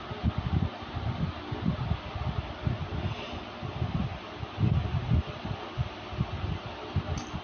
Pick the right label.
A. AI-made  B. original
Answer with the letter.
B